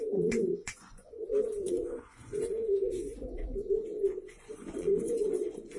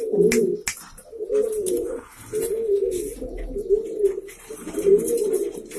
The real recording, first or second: second